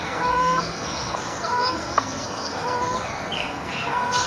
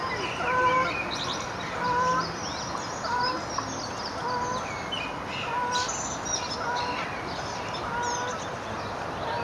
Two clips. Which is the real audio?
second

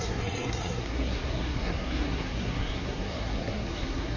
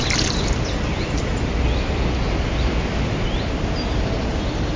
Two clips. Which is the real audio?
second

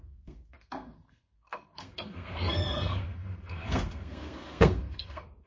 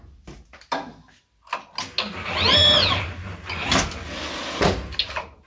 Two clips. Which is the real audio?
second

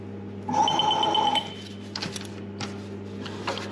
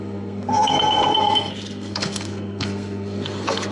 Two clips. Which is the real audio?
first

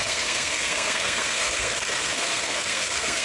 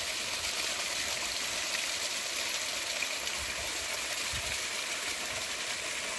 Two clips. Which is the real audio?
second